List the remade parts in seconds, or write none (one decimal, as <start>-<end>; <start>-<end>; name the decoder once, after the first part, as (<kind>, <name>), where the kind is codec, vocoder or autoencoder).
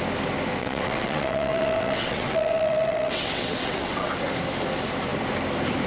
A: 0.6-4.1 (vocoder, WaveNeXt)